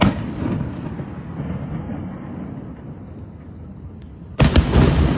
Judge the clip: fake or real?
real